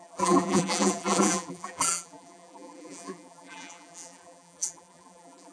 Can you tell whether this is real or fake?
fake